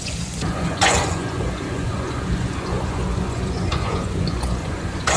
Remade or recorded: remade